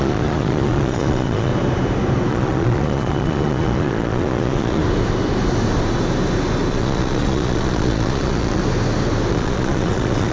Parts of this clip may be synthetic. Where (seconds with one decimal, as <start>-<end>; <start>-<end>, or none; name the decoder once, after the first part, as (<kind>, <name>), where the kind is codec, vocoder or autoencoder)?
0.0-1.5 (vocoder, Vocos); 2.3-4.8; 6.7-8.6; 9.3-10.3